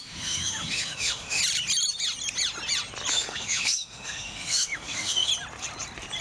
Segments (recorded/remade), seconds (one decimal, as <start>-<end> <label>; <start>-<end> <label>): 0.0-1.4 remade; 1.4-3.1 recorded; 3.1-5.3 remade; 5.3-6.2 recorded